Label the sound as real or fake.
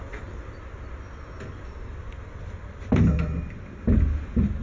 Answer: real